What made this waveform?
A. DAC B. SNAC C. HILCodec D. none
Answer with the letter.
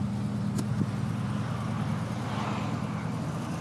D